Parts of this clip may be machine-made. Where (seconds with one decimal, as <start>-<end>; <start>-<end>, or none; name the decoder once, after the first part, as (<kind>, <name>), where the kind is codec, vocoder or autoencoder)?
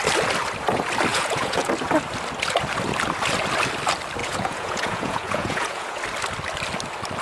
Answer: 1.1-1.7 (vocoder, Vocos); 4.2-6.0